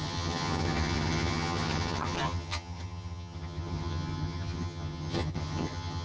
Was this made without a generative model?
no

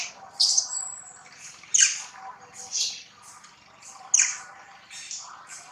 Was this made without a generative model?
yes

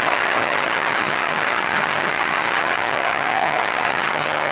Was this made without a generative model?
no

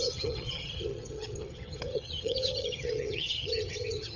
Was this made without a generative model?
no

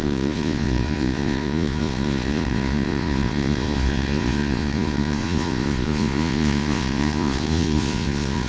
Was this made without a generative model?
no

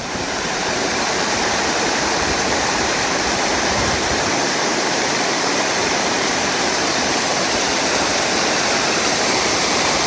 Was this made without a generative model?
no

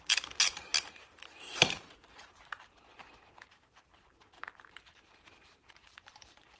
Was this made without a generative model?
no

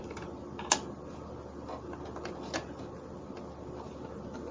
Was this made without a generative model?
yes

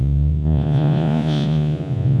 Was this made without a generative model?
no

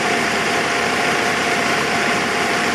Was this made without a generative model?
no